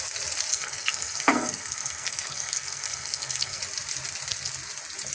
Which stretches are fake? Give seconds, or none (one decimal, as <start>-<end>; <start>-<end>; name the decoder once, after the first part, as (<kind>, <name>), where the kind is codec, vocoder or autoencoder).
0.5-3.6 (codec, SNAC)